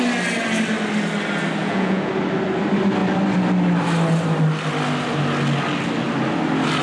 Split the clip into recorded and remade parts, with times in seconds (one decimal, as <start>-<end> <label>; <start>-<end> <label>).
0.0-1.6 recorded; 1.6-2.1 remade; 2.1-6.8 recorded